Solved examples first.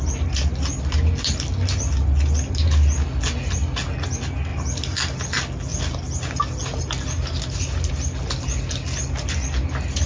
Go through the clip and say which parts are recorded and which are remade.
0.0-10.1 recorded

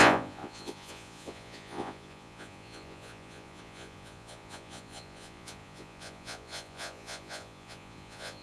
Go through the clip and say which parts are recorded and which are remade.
0.0-8.4 remade